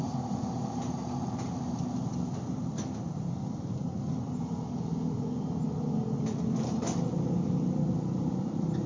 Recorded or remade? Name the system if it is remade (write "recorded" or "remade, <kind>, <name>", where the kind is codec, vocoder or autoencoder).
recorded